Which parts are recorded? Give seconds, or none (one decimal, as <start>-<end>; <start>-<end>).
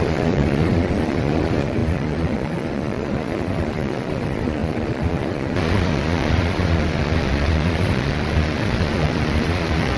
none